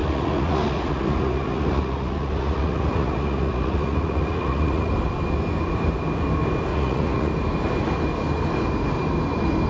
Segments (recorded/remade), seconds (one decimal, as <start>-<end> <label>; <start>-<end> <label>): 0.0-4.9 remade; 4.9-6.7 recorded; 6.7-7.3 remade; 7.3-9.7 recorded